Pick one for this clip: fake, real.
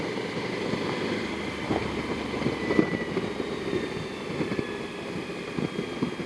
real